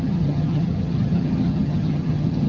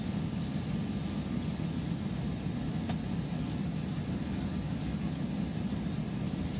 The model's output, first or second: first